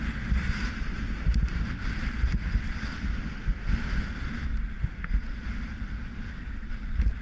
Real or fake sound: real